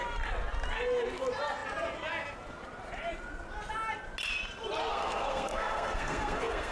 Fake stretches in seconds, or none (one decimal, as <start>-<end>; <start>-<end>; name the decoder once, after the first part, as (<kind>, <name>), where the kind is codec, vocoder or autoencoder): 4.9-6.7 (codec, SNAC)